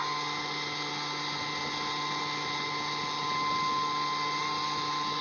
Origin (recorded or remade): recorded